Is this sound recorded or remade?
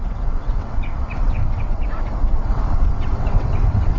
remade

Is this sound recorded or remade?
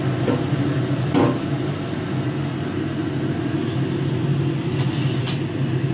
recorded